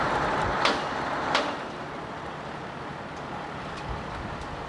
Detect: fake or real real